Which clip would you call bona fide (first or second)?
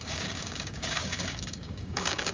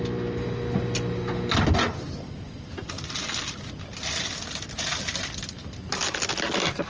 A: second